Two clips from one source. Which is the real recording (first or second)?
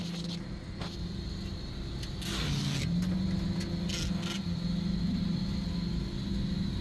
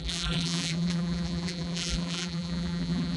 first